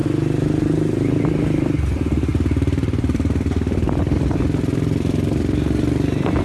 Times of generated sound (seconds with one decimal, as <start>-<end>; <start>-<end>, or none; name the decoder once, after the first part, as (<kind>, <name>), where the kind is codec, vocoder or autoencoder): 2.3-6.4 (vocoder, BigVGAN v2)